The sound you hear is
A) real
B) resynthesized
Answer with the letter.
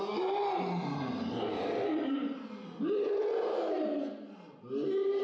A